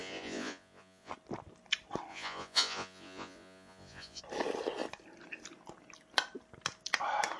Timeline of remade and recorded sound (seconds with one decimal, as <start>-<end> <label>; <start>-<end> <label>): 0.0-1.1 remade; 1.1-2.1 recorded; 2.1-4.2 remade; 4.2-7.4 recorded

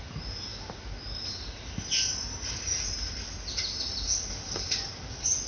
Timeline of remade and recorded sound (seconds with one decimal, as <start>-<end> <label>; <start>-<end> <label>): 0.0-5.5 recorded

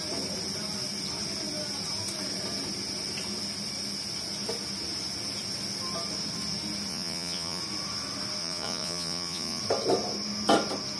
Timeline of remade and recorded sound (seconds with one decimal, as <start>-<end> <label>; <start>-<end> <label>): 0.0-6.9 recorded; 6.9-7.6 remade; 7.6-8.4 recorded; 8.4-9.6 remade; 9.6-11.0 recorded

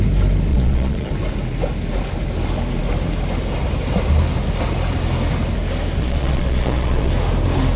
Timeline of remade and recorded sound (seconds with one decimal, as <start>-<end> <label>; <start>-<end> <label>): 0.0-0.5 recorded; 0.5-1.1 remade; 1.1-6.0 recorded; 6.0-7.1 remade; 7.1-7.8 recorded

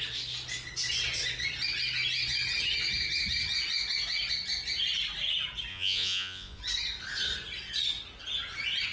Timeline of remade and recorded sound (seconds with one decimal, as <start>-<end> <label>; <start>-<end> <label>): 0.0-5.7 recorded; 5.7-6.6 remade; 6.6-8.9 recorded

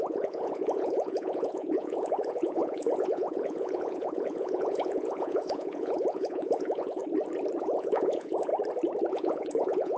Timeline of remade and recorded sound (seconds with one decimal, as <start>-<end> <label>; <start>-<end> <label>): 0.0-7.0 remade; 7.0-7.6 recorded; 7.6-8.5 remade; 8.5-9.1 recorded; 9.1-10.0 remade